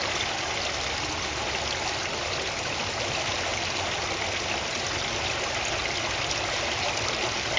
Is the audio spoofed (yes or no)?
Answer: no